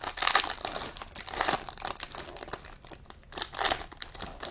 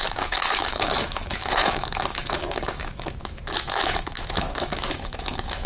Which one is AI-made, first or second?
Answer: second